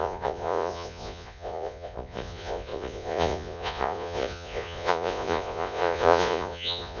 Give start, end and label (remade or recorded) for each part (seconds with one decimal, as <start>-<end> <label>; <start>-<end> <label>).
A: 0.0-7.0 remade